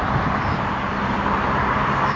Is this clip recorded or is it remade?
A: recorded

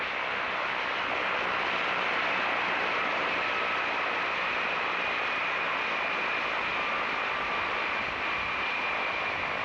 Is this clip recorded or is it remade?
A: recorded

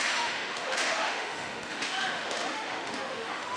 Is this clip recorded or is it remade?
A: remade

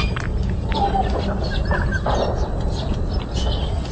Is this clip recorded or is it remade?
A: recorded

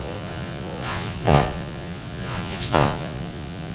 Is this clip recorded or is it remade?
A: remade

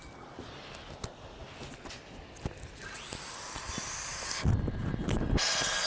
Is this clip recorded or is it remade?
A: recorded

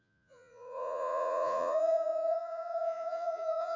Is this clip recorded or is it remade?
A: remade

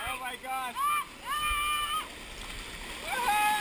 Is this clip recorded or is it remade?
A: recorded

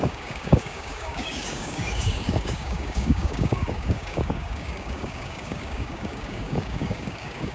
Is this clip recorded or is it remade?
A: remade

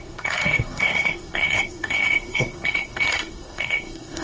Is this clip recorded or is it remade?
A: remade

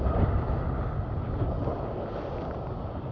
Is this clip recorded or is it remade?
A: recorded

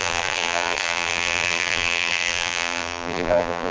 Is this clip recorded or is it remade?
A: remade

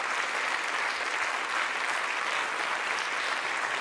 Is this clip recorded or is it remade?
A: recorded